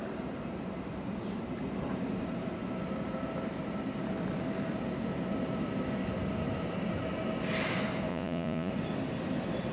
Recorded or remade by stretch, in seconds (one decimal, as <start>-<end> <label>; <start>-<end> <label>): 0.0-8.1 recorded; 8.1-8.7 remade; 8.7-9.7 recorded